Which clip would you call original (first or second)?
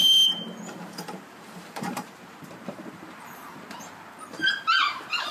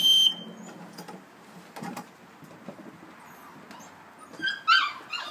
second